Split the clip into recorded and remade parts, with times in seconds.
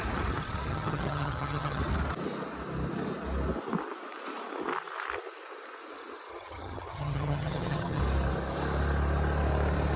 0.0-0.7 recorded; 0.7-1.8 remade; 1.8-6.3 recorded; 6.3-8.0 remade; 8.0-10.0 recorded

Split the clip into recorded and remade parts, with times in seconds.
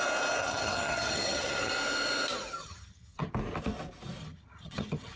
0.0-0.4 recorded; 0.4-1.7 remade; 1.7-2.6 recorded; 2.6-3.3 remade; 3.3-4.2 recorded; 4.2-5.2 remade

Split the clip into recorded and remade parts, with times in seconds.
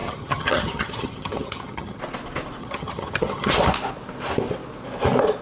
0.0-2.0 remade; 2.0-2.6 recorded; 2.6-3.5 remade; 3.5-5.4 recorded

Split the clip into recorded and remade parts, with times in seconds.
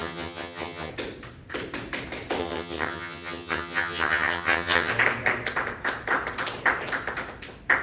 0.0-0.9 remade; 0.9-2.4 recorded; 2.4-4.9 remade; 4.9-7.8 recorded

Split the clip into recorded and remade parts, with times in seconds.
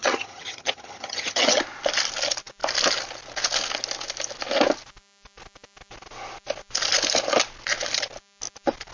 0.0-1.6 remade; 1.6-8.9 recorded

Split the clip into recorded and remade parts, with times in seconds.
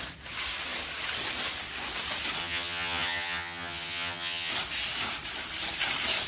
0.0-2.4 recorded; 2.4-4.5 remade; 4.5-6.3 recorded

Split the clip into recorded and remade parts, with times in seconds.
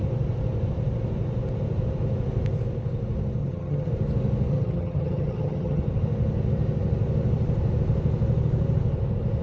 0.0-3.4 recorded; 3.4-3.9 remade; 3.9-4.5 recorded; 4.5-5.8 remade; 5.8-9.4 recorded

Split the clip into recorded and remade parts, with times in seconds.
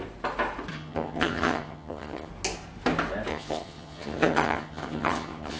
0.0-0.7 recorded; 0.7-2.3 remade; 2.3-3.3 recorded; 3.3-5.6 remade